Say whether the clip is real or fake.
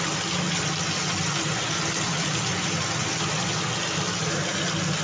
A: real